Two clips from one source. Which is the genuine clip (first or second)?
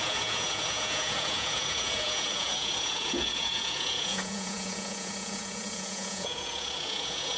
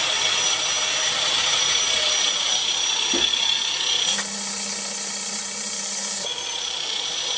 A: second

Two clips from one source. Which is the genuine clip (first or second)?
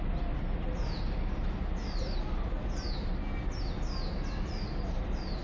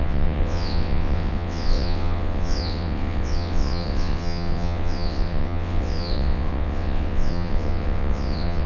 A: first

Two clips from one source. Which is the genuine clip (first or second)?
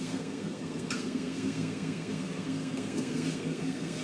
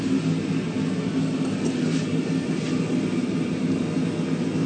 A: second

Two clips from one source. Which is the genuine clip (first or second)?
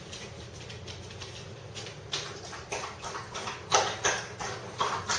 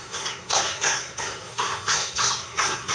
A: first